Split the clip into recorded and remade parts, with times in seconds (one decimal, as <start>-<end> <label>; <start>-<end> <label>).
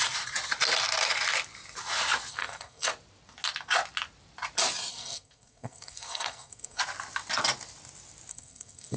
0.0-2.3 recorded; 2.3-2.9 remade; 2.9-4.9 recorded; 4.9-6.8 remade; 6.8-8.3 recorded; 8.3-9.0 remade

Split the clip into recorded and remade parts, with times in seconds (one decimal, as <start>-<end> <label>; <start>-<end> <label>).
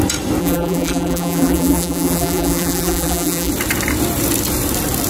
0.0-0.4 recorded; 0.4-3.5 remade; 3.5-5.1 recorded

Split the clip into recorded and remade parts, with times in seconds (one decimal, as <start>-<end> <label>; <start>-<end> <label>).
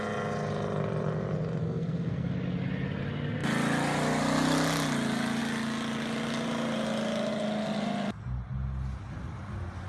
0.0-1.6 recorded; 1.6-2.3 remade; 2.3-9.9 recorded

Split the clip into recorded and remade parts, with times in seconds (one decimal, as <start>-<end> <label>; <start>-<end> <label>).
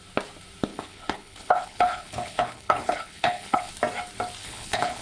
0.0-0.7 recorded; 0.7-3.7 remade; 3.7-4.4 recorded; 4.4-5.0 remade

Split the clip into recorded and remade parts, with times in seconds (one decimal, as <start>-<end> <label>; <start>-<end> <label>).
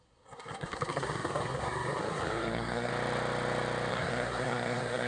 0.0-2.9 remade; 2.9-3.9 recorded; 3.9-5.1 remade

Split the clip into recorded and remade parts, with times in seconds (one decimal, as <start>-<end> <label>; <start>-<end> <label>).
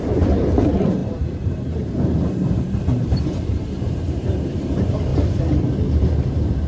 0.0-5.1 remade; 5.1-6.3 recorded; 6.3-6.7 remade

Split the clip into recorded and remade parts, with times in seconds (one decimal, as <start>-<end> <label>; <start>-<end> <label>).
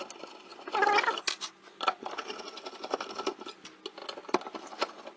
0.0-5.2 recorded